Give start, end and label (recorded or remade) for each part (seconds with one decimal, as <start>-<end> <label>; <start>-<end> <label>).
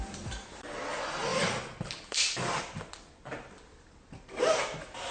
0.0-5.1 recorded